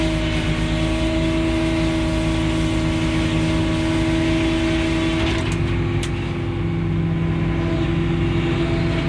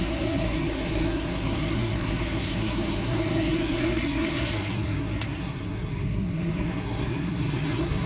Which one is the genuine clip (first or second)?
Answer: first